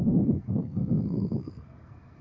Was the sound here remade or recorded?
remade